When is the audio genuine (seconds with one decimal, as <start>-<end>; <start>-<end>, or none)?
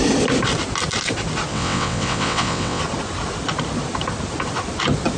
0.0-1.5; 2.8-5.2